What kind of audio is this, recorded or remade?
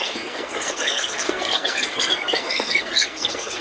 remade